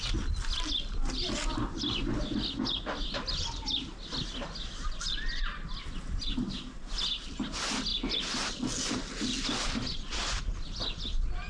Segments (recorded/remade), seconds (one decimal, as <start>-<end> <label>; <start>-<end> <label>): 0.0-11.5 recorded